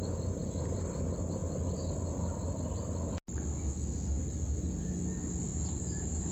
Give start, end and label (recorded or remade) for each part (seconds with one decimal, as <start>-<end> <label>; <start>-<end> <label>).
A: 0.0-5.5 recorded; 5.5-6.3 remade